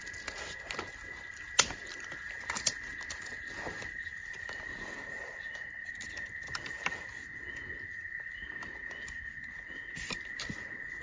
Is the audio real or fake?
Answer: real